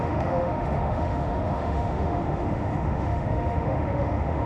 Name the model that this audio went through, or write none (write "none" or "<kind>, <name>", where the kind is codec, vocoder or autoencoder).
autoencoder, DAC-VAE